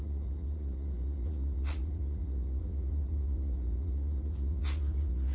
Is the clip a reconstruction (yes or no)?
yes